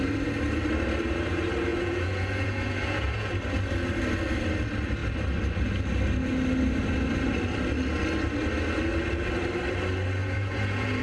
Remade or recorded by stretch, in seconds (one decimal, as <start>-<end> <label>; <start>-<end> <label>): 0.0-1.7 recorded; 1.7-3.3 remade; 3.3-10.2 recorded; 10.2-11.0 remade